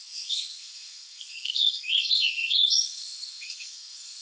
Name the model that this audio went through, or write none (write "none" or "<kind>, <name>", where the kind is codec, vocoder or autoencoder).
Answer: codec, SNAC